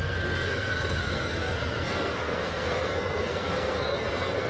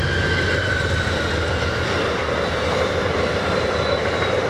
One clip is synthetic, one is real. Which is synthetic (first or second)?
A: first